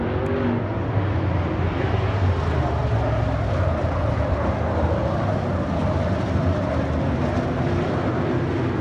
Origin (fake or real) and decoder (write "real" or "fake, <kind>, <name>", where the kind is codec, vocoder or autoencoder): real